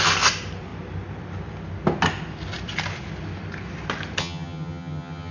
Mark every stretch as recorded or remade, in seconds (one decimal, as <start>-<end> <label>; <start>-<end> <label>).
0.0-4.2 recorded; 4.2-5.3 remade